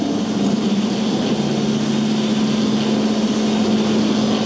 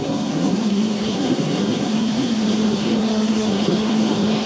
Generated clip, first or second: second